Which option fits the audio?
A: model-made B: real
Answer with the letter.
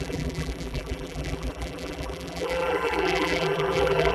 A